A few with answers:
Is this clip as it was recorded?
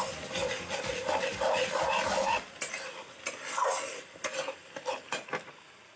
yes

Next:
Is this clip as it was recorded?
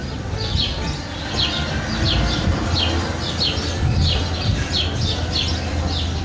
yes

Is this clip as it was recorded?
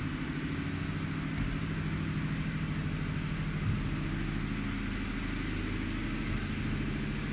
yes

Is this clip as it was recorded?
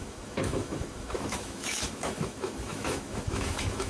no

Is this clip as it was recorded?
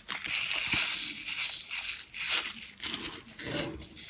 yes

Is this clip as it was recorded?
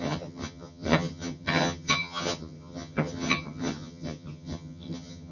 no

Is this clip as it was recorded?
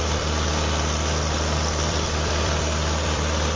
no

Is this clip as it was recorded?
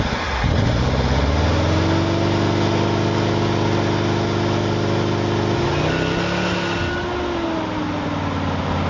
yes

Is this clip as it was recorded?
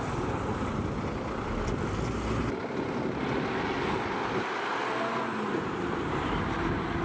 yes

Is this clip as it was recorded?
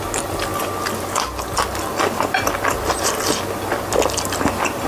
yes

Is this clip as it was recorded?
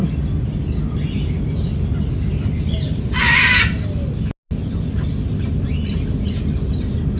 yes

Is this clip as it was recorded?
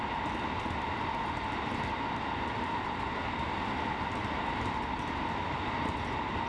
yes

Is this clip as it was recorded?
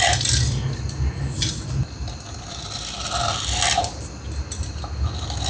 yes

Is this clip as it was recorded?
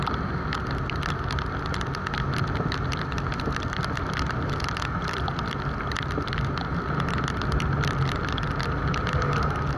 yes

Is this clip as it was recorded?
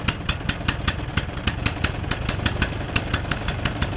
yes